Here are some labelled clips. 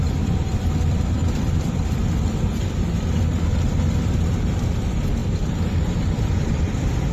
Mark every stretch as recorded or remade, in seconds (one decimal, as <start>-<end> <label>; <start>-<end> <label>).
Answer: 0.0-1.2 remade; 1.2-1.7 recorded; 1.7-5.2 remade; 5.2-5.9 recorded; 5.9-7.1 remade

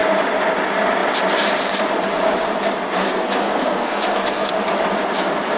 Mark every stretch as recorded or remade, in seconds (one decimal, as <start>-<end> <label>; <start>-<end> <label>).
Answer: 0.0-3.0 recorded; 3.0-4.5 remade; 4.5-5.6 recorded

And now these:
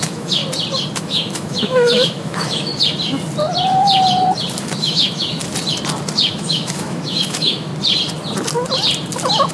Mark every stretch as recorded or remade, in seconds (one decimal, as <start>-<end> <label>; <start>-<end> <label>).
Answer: 0.0-0.4 remade; 0.4-1.0 recorded; 1.0-2.7 remade; 2.7-4.6 recorded; 4.6-5.4 remade; 5.4-6.3 recorded; 6.3-7.7 remade; 7.7-9.5 recorded

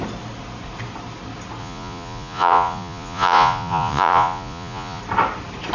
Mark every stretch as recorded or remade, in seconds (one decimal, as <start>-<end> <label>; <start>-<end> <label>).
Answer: 0.0-1.6 recorded; 1.6-5.0 remade; 5.0-5.7 recorded

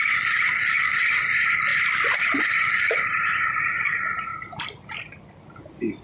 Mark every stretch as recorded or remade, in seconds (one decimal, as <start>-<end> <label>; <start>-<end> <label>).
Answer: 0.0-6.0 recorded